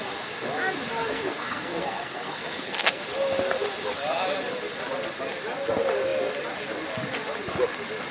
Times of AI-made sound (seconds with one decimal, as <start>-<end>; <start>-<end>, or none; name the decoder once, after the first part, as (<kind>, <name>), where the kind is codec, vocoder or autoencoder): 1.0-3.0 (codec, SNAC)